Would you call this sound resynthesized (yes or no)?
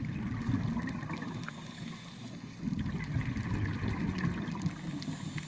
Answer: no